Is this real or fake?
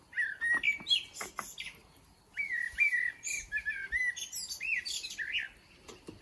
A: real